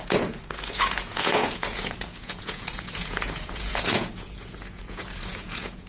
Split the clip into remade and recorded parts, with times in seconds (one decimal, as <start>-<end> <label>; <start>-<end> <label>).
0.0-5.9 remade

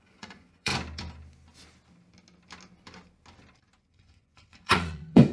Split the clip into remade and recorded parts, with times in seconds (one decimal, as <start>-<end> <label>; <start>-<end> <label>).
0.0-0.7 remade; 0.7-3.9 recorded; 3.9-5.3 remade

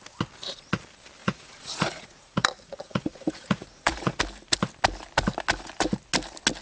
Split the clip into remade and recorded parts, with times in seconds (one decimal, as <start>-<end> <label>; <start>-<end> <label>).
0.0-1.2 recorded; 1.2-4.2 remade; 4.2-6.6 recorded

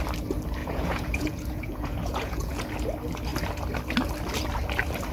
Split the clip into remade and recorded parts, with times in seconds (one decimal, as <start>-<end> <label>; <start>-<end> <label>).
0.0-0.6 recorded; 0.6-2.7 remade; 2.7-5.1 recorded

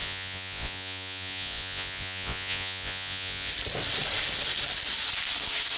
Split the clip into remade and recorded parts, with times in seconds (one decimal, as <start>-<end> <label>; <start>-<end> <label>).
0.0-3.5 remade; 3.5-5.8 recorded

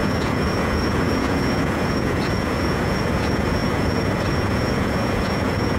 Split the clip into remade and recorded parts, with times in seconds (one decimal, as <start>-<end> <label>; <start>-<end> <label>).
0.0-5.8 remade

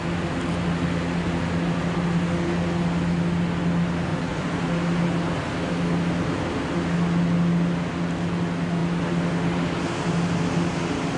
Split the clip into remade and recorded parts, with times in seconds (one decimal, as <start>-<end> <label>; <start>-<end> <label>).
0.0-4.1 recorded; 4.1-4.6 remade; 4.6-11.2 recorded